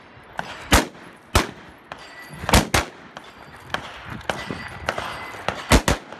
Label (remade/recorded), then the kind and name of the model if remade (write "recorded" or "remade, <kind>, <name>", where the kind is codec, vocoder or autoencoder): recorded